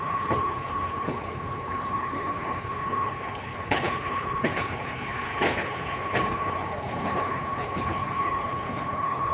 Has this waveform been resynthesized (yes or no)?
yes